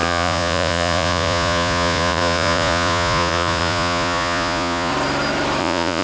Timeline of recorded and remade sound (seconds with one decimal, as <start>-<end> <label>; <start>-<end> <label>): 0.0-4.9 remade; 4.9-5.6 recorded; 5.6-6.0 remade